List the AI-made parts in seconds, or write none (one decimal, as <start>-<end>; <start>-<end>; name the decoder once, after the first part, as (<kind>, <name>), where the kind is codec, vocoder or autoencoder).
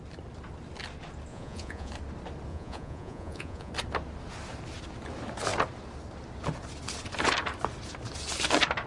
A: 1.3-1.9 (vocoder, Vocos); 2.5-3.7